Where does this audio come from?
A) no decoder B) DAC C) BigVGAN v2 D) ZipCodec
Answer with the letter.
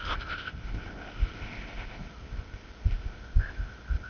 D